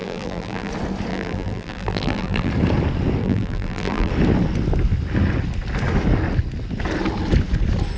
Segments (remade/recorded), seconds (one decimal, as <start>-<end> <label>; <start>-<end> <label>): 0.0-0.7 remade; 0.7-1.1 recorded; 1.1-2.5 remade; 2.5-3.2 recorded; 3.2-4.1 remade; 4.1-8.0 recorded